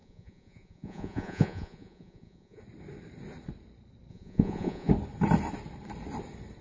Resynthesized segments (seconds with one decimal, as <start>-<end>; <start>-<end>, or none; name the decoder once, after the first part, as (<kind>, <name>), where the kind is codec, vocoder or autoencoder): 0.0-2.6 (vocoder, Vocos); 4.1-4.9